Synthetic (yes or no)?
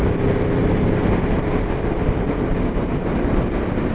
no